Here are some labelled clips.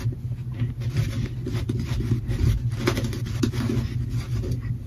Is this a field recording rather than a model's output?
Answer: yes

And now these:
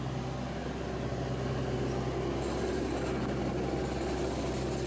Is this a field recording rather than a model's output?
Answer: yes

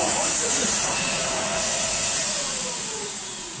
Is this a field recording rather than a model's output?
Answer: no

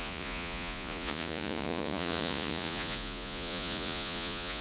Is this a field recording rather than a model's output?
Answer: no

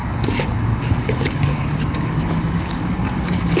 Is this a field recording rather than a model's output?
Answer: no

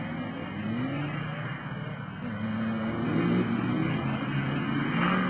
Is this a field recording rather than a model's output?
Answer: yes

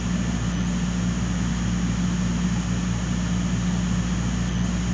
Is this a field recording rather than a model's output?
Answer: yes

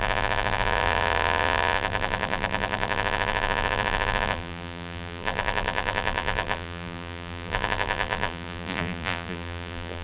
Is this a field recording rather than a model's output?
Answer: no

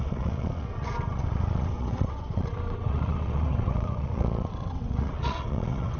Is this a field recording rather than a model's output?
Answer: no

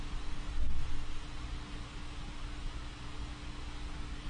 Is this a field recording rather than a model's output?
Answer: yes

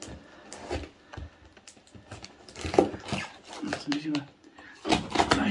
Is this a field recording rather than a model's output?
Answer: yes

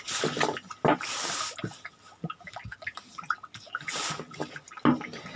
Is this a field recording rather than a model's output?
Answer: yes